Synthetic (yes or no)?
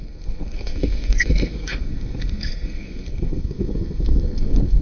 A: yes